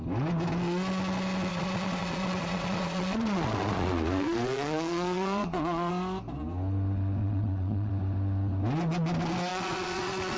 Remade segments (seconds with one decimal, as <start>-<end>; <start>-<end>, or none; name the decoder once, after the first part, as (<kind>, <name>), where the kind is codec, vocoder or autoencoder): 1.5-5.9 (vocoder, Vocos); 7.2-7.9; 9.5-10.4